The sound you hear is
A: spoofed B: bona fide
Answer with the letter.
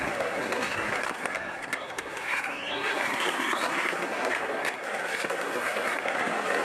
A